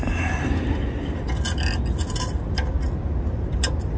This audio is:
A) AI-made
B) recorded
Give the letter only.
B